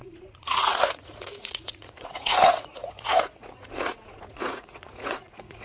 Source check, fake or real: fake